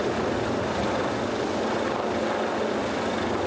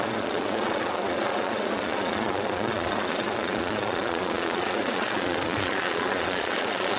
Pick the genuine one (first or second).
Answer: first